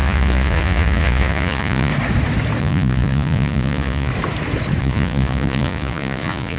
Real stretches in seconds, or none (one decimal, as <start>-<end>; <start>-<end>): 1.9-2.6; 4.1-4.8